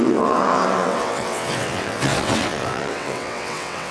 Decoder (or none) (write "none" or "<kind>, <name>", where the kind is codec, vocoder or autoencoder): vocoder, WaveNeXt